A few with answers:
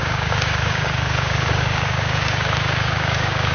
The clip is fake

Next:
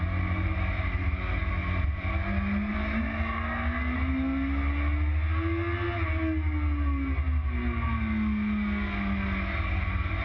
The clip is real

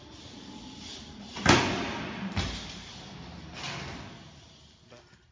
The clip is real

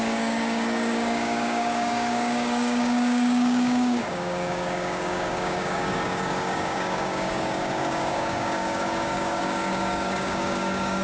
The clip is fake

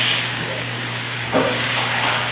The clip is fake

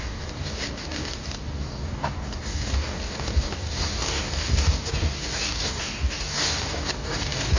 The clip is fake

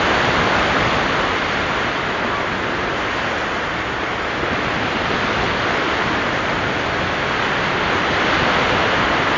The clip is real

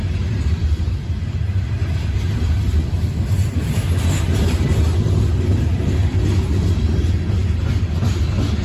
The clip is real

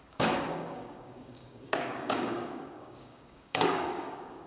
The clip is fake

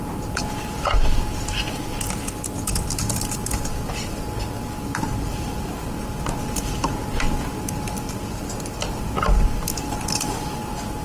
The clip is real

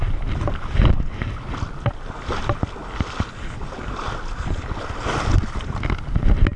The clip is real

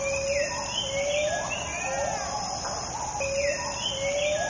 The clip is real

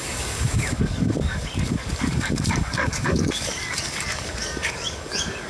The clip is fake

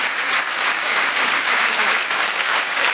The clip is fake